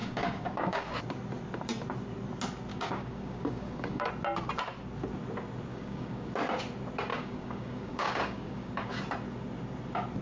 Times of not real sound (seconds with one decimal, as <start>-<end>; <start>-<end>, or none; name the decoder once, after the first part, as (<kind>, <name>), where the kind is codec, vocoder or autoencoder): 0.0-1.0 (codec, DAC); 2.7-4.1; 5.7-6.3; 7.1-9.0

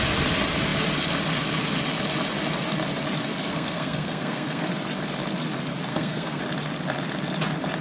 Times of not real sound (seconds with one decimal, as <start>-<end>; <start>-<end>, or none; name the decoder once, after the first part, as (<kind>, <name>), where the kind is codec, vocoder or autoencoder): 3.5-4.7 (codec, SNAC); 5.9-6.4